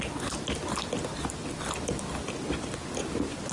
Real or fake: real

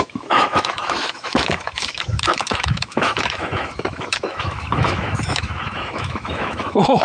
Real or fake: fake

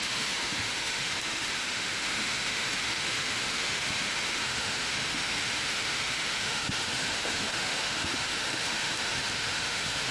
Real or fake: fake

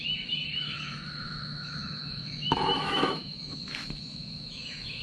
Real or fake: fake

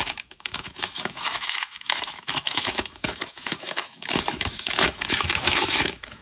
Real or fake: fake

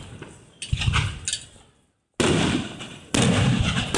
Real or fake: real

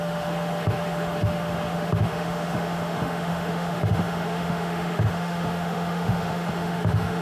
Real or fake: fake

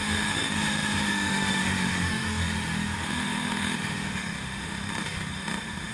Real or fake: fake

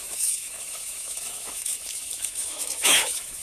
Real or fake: fake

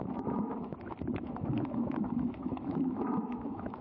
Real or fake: fake